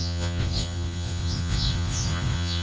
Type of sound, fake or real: fake